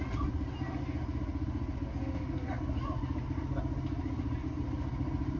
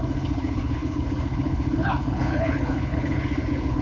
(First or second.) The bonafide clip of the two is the first